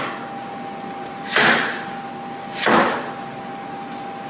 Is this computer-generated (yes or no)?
no